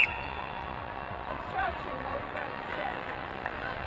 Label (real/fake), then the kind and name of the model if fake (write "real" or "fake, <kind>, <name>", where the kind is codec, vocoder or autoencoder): fake, vocoder, WaveNeXt